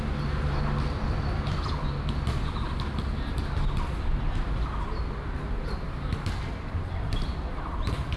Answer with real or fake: real